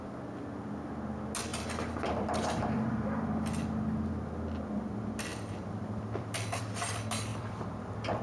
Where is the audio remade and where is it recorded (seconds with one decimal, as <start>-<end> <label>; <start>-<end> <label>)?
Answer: 0.0-1.5 recorded; 1.5-3.8 remade; 3.8-5.3 recorded; 5.3-6.6 remade; 6.6-7.3 recorded; 7.3-8.2 remade